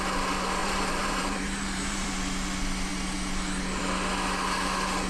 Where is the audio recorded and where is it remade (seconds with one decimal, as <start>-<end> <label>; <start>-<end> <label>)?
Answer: 0.0-0.6 recorded; 0.6-2.1 remade; 2.1-5.1 recorded